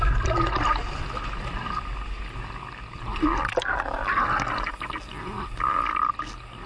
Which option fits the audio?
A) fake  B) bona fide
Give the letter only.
B